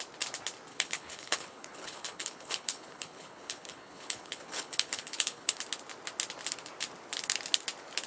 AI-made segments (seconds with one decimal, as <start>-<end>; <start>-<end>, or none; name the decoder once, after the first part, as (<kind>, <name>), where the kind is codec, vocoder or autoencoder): 0.7-5.6 (codec, HILCodec)